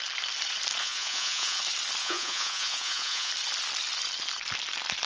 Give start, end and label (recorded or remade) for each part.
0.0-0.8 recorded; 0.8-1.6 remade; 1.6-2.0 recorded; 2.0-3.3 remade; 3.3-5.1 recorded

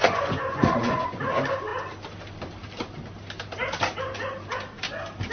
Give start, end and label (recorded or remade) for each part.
0.0-1.2 remade; 1.2-5.3 recorded

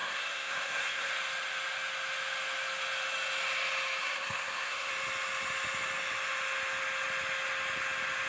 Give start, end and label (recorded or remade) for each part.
0.0-1.1 remade; 1.1-4.0 recorded; 4.0-4.9 remade; 4.9-8.3 recorded

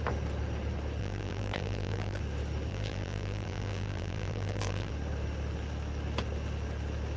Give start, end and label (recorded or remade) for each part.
0.0-1.0 recorded; 1.0-2.2 remade; 2.2-2.7 recorded; 2.7-4.9 remade; 4.9-7.2 recorded